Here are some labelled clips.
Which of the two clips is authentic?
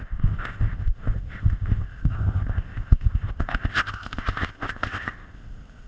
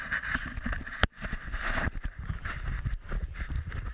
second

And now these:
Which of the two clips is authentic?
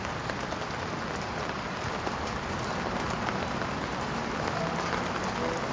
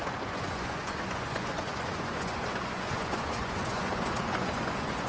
first